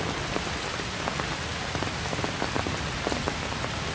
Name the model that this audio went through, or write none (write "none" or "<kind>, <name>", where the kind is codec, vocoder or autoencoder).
none